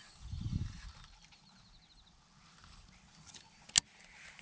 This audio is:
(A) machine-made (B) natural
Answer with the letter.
B